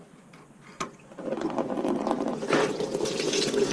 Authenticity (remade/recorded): remade